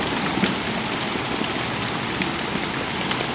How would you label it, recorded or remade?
recorded